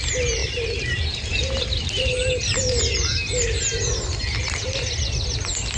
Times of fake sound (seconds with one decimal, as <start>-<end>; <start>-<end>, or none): 0.4-2.8